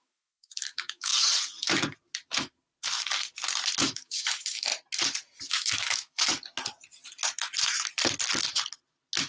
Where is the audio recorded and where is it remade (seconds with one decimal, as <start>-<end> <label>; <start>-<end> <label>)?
0.0-1.1 remade; 1.1-3.8 recorded; 3.8-4.7 remade; 4.7-5.5 recorded; 5.5-6.3 remade; 6.3-9.3 recorded